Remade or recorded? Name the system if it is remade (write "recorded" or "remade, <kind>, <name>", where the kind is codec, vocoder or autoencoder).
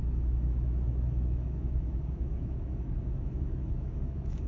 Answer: remade, autoencoder, DAC-VAE